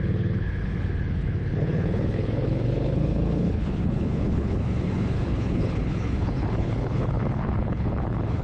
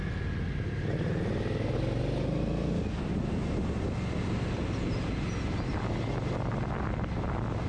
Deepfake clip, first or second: first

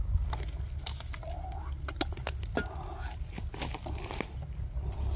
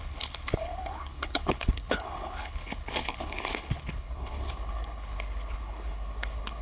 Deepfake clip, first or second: second